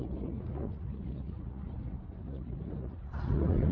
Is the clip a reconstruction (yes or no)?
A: yes